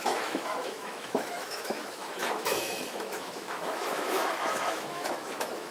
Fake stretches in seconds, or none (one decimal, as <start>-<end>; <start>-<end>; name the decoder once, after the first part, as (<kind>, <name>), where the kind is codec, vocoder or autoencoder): 0.0-5.7 (autoencoder, DAC-VAE)